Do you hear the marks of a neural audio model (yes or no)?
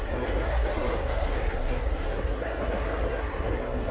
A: yes